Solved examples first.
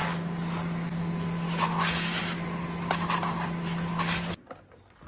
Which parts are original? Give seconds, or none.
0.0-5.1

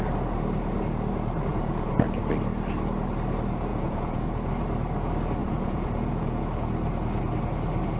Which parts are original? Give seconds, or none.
0.0-1.5; 2.2-3.7; 4.5-5.4; 6.4-8.0

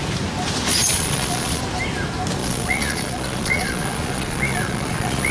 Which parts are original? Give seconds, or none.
0.0-0.7; 1.6-2.4